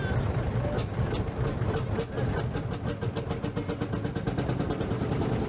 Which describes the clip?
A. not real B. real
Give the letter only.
B